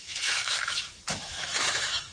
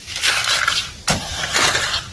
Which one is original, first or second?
second